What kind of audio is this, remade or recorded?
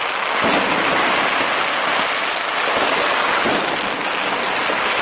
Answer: recorded